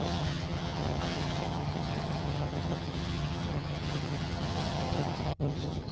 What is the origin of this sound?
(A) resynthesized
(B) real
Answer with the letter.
A